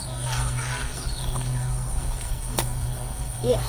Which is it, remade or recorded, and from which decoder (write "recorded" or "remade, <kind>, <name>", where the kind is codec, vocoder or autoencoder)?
remade, codec, SNAC